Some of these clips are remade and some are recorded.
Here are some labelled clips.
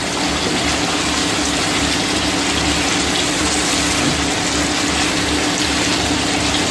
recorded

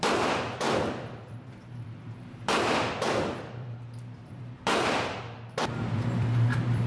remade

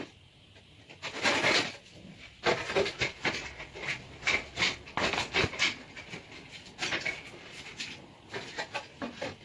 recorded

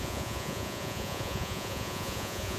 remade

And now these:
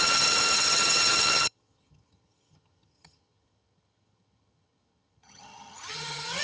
remade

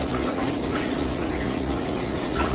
remade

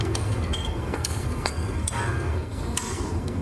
remade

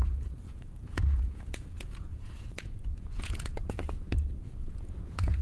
remade